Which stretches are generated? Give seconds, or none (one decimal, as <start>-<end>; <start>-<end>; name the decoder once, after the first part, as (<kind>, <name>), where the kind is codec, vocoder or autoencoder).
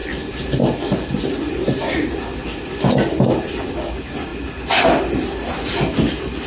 none